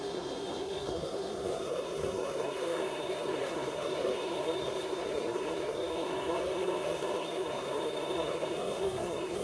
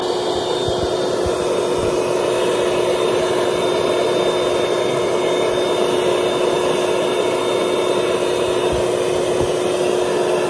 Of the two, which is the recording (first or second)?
second